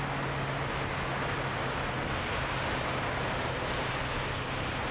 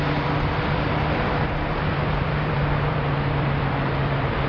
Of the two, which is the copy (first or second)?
second